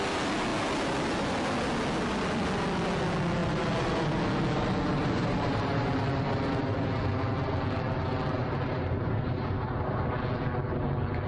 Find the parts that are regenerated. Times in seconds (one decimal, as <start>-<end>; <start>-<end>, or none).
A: 5.0-5.9; 8.4-10.1